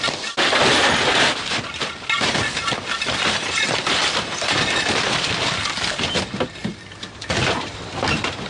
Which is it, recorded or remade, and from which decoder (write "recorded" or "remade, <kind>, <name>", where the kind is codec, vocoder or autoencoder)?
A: recorded